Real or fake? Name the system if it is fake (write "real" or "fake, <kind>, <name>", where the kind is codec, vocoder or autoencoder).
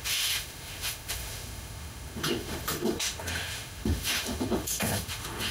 fake, autoencoder, DAC-VAE